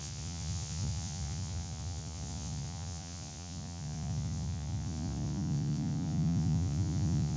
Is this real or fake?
fake